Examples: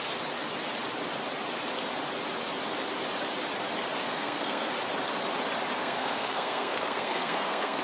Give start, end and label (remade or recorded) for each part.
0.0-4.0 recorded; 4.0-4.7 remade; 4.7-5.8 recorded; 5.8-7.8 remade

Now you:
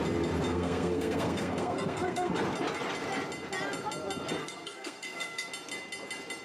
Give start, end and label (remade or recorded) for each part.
0.0-0.5 recorded; 0.5-2.3 remade; 2.3-4.4 recorded; 4.4-5.5 remade; 5.5-6.4 recorded

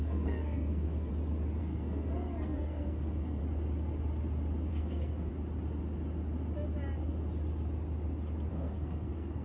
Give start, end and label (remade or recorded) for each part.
0.0-1.1 remade; 1.1-1.6 recorded; 1.6-3.4 remade; 3.4-4.7 recorded; 4.7-5.3 remade; 5.3-8.5 recorded; 8.5-9.4 remade

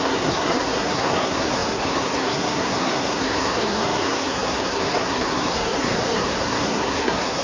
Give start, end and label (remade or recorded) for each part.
0.0-7.4 remade

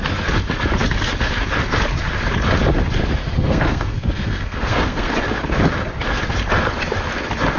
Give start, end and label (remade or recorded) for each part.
0.0-3.2 recorded; 3.2-5.1 remade; 5.1-7.6 recorded

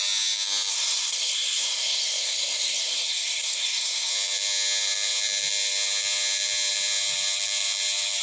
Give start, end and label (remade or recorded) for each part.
0.0-0.7 recorded; 0.7-4.1 remade; 4.1-8.2 recorded

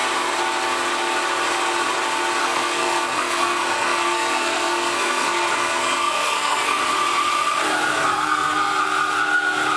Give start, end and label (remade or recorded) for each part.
0.0-2.4 recorded; 2.4-6.8 remade; 6.8-7.9 recorded; 7.9-8.8 remade; 8.8-9.8 recorded